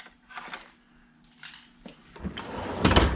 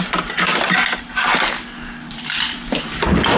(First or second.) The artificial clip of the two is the second